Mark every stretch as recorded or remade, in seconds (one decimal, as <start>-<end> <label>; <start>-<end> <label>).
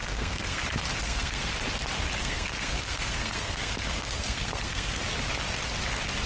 0.0-0.6 remade; 0.6-1.0 recorded; 1.0-1.5 remade; 1.5-2.2 recorded; 2.2-5.0 remade; 5.0-6.3 recorded